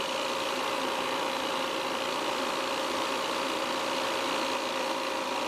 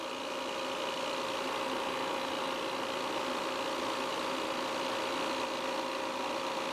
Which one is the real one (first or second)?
second